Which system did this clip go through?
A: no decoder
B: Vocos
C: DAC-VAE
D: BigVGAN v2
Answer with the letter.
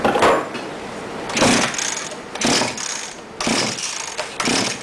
A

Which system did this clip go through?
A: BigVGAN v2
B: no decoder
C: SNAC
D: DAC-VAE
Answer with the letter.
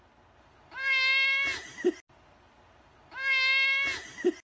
B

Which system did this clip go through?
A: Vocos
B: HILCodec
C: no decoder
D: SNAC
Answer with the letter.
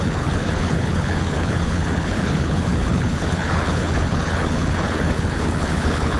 B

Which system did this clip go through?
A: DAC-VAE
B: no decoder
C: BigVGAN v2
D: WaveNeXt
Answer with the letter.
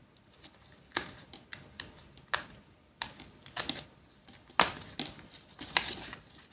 B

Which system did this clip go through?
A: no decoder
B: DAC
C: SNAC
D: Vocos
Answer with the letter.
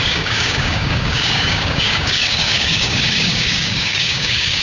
B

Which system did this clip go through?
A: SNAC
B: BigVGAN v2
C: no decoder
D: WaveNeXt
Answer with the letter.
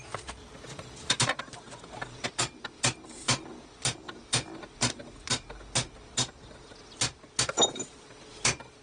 C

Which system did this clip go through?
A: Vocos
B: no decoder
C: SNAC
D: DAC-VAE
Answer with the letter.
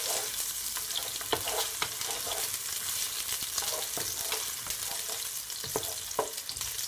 B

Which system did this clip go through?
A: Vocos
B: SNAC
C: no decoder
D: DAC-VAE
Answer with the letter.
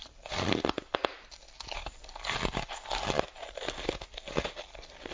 C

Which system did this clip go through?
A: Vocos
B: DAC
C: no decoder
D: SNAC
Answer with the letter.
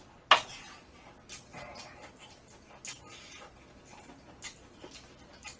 C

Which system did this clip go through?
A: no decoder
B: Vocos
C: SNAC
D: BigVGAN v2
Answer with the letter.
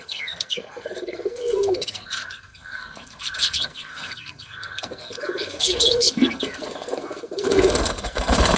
C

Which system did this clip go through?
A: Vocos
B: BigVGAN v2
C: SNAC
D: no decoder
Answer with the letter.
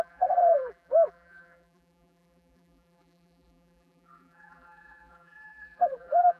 B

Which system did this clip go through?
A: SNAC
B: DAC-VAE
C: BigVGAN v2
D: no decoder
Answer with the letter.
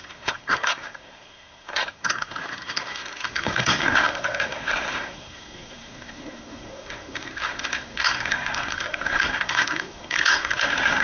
A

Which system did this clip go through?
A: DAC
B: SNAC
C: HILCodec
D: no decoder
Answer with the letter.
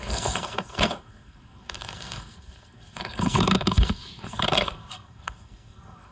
B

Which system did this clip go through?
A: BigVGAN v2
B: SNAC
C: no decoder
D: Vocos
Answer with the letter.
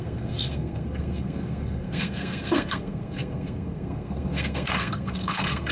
B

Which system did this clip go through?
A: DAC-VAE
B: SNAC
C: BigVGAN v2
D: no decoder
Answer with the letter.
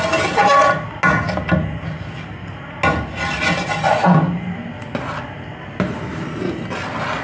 D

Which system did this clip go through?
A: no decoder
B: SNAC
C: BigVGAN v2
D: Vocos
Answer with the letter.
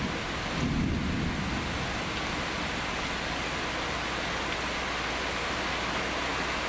A